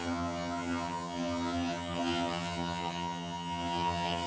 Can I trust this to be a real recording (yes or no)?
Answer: no